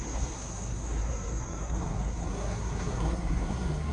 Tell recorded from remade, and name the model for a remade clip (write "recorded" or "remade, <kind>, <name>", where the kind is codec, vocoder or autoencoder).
remade, codec, SNAC